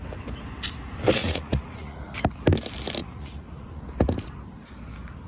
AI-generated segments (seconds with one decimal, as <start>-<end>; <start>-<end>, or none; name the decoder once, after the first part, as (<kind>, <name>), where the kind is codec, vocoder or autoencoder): 1.2-2.2 (vocoder, Vocos); 3.0-3.8